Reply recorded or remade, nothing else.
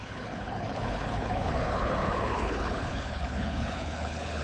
remade